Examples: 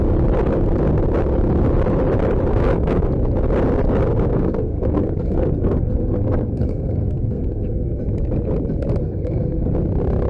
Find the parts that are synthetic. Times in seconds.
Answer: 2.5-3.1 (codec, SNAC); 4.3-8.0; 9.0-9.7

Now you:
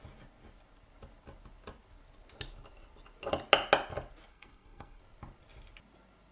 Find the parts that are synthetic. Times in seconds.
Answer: 4.3-5.0 (codec, SNAC)

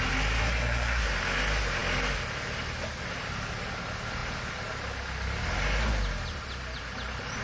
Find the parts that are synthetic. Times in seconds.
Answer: 0.4-1.1 (codec, SNAC)

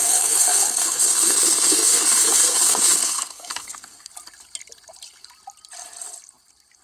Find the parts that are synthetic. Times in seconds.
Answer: 0.0-4.1 (codec, SNAC)

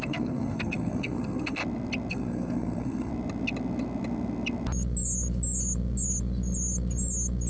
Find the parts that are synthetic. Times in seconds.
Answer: 0.0-1.6 (codec, SNAC); 2.1-3.1